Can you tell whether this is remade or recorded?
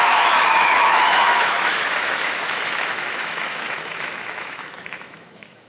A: remade